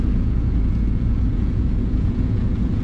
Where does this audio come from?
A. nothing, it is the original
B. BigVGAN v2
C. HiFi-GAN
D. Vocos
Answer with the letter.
D